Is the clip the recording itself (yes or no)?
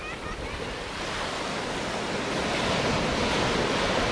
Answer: yes